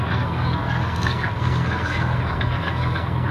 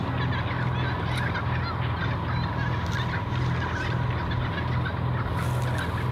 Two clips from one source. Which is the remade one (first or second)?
first